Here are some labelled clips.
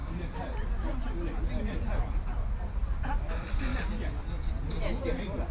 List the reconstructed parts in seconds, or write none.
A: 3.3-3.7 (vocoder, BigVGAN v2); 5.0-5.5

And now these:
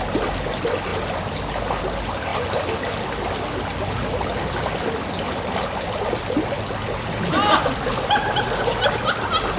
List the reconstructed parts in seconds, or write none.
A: none

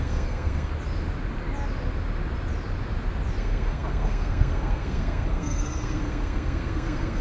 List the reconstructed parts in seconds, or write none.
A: 0.0-0.7 (codec, SNAC); 3.4-7.2

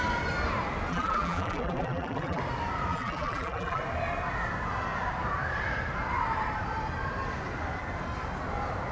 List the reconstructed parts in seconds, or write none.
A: 0.9-2.4 (vocoder, BigVGAN v2); 2.9-3.8

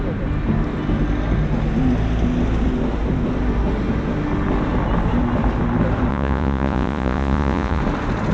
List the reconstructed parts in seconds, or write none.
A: 6.1-7.8 (vocoder, Vocos)